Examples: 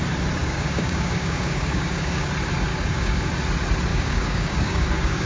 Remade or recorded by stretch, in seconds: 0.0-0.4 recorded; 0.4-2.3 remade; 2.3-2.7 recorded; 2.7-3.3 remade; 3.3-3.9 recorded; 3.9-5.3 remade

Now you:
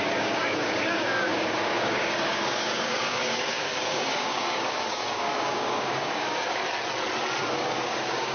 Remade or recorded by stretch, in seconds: 0.0-6.6 remade; 6.6-7.7 recorded; 7.7-8.3 remade